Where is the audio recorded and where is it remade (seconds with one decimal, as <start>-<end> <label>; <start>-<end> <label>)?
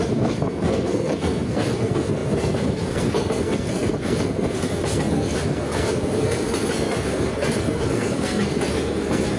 0.0-9.4 remade